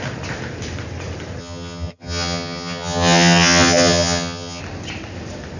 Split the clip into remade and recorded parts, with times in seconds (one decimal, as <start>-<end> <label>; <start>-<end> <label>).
0.0-1.4 recorded; 1.4-4.6 remade; 4.6-5.6 recorded